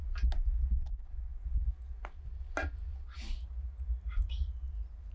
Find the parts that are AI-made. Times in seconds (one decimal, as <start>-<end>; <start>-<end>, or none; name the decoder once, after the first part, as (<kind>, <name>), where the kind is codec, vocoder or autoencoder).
none

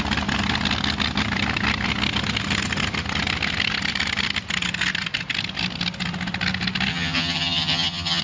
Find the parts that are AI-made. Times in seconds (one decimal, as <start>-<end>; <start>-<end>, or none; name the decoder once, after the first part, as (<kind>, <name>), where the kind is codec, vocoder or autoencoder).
6.9-8.2 (vocoder, HiFi-GAN)

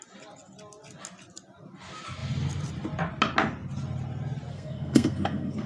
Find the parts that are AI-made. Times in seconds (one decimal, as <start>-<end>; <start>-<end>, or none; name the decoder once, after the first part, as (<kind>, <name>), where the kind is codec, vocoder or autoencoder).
4.5-5.7 (codec, SNAC)

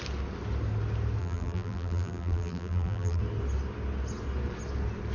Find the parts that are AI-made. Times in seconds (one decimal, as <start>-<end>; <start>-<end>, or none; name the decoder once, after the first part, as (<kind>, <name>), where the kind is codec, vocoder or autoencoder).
1.2-3.2 (vocoder, BigVGAN v2)

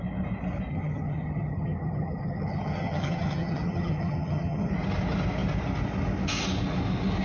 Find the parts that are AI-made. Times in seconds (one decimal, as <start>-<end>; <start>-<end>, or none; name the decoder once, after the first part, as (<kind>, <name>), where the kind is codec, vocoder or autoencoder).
0.7-4.7 (vocoder, HiFi-GAN)

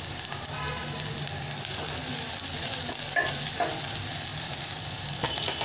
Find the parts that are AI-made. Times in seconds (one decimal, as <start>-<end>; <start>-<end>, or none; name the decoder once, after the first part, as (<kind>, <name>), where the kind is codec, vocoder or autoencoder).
none

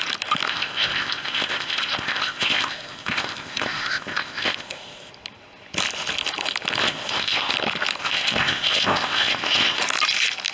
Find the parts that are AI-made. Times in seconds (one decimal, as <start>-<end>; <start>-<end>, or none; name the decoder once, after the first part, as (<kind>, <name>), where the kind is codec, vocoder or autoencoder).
0.5-5.1 (codec, ZipCodec); 6.8-7.5; 8.0-9.8

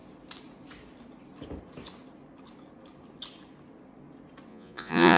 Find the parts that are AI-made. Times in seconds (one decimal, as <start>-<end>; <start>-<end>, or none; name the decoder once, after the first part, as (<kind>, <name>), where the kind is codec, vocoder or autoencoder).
4.5-5.2 (vocoder, Vocos)